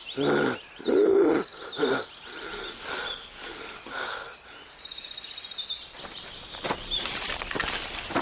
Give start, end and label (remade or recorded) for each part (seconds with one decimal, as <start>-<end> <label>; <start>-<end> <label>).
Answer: 0.0-8.2 recorded